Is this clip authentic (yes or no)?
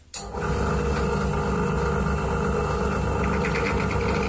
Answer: yes